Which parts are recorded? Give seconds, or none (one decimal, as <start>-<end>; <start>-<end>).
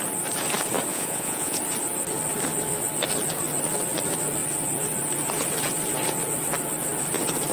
0.0-0.9; 1.6-7.5